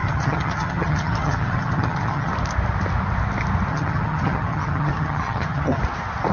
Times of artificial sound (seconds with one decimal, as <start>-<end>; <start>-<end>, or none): 0.0-2.3; 3.7-5.8